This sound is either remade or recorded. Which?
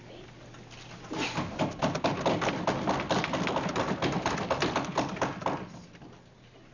recorded